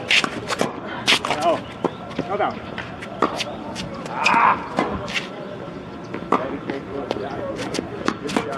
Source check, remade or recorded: recorded